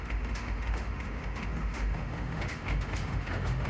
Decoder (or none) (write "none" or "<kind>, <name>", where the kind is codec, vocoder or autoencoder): autoencoder, DAC-VAE